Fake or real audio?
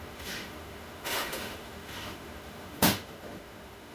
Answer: fake